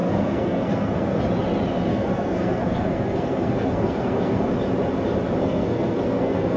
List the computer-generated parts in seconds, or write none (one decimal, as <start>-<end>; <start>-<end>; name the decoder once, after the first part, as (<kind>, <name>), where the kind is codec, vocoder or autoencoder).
0.0-1.2 (codec, SNAC); 1.9-4.5; 5.4-6.6